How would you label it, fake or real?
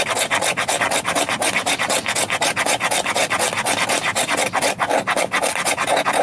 real